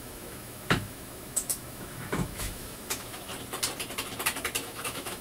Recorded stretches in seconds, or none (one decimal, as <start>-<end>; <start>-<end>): 3.3-4.6